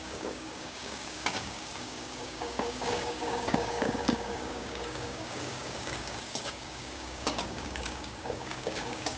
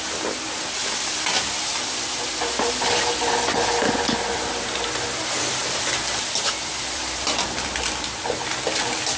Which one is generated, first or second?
first